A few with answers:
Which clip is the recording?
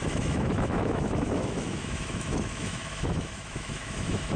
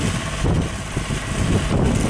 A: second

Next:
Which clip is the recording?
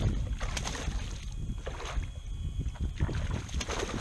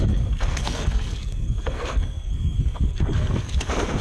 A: first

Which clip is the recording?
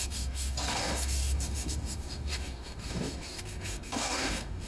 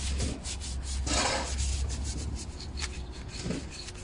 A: second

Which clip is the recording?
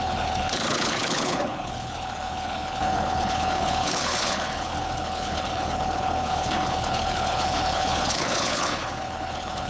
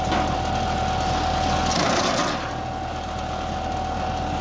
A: second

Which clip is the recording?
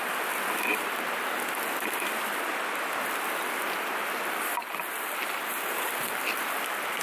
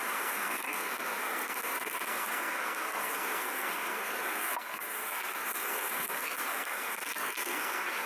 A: first